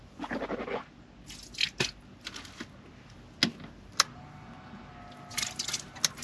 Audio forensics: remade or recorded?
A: recorded